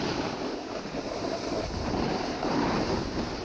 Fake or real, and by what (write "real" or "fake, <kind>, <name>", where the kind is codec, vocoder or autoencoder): fake, vocoder, BigVGAN v2